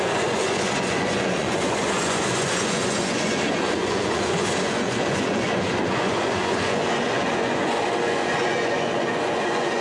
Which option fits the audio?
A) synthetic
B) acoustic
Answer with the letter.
A